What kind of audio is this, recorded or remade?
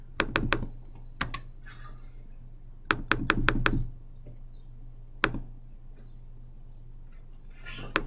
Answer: recorded